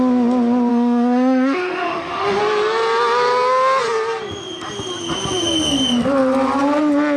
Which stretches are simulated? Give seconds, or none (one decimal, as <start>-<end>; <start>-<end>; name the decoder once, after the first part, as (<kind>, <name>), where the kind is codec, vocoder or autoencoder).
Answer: 0.7-2.4 (autoencoder, DAC-VAE)